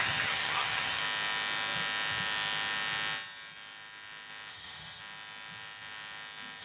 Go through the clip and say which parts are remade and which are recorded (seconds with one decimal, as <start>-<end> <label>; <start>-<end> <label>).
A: 0.0-1.0 remade; 1.0-4.5 recorded; 4.5-5.0 remade; 5.0-6.6 recorded